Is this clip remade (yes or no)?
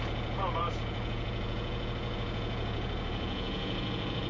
yes